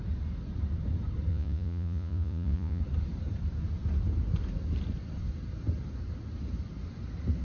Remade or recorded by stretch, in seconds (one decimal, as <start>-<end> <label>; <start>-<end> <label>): 0.0-1.3 recorded; 1.3-2.8 remade; 2.8-7.4 recorded